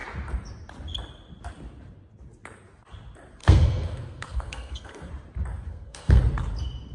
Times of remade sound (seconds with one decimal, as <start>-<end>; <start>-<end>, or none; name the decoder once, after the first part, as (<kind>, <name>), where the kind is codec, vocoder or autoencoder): 3.4-5.1 (codec, SNAC); 5.7-6.2